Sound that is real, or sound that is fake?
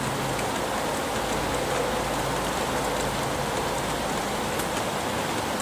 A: real